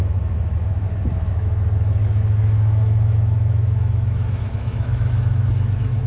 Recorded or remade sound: remade